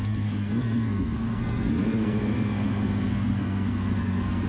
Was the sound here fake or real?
fake